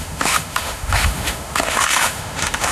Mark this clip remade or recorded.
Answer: remade